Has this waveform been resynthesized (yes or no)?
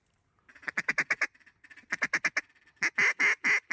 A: no